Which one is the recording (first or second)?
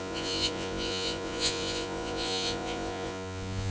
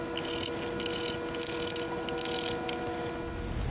second